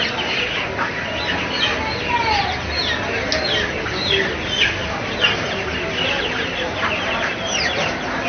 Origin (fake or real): real